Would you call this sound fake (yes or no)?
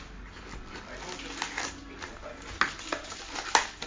no